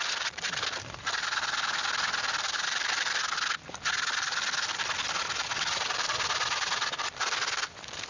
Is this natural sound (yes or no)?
yes